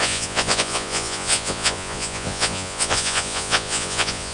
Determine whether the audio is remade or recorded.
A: remade